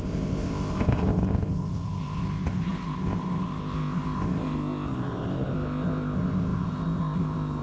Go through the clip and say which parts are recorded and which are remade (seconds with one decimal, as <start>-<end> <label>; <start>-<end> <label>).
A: 0.0-7.6 remade